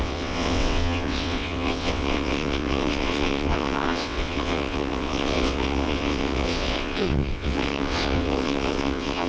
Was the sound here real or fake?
fake